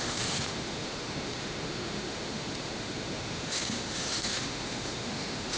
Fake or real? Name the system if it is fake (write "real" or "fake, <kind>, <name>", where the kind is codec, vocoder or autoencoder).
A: fake, autoencoder, DAC-VAE